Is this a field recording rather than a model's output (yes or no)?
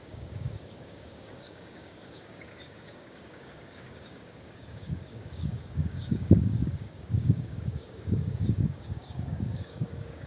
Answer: no